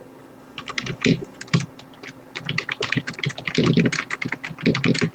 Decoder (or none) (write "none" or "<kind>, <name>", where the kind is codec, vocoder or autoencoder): none